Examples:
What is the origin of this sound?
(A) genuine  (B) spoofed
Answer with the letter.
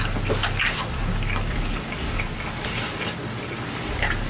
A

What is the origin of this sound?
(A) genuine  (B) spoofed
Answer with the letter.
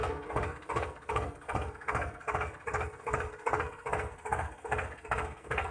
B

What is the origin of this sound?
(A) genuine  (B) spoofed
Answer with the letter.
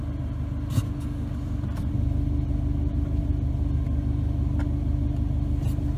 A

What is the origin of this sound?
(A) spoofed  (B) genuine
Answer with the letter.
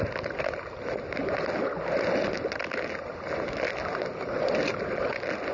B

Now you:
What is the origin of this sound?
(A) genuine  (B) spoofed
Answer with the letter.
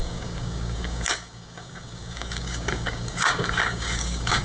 B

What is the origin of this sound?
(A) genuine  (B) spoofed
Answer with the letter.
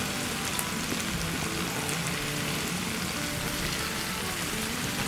A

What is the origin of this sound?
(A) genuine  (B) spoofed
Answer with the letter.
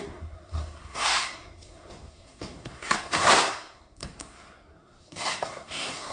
B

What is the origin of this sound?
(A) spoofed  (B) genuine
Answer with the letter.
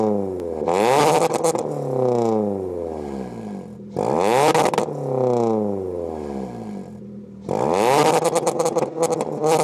B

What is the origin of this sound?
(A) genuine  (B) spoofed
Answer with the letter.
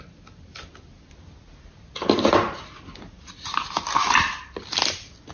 A